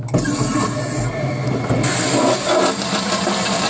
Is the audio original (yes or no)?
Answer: yes